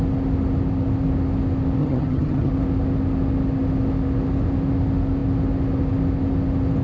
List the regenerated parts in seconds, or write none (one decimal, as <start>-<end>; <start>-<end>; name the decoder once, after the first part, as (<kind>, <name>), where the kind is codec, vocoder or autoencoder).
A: 1.8-2.5 (vocoder, HiFi-GAN)